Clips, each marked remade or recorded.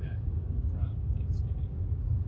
remade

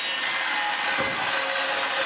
recorded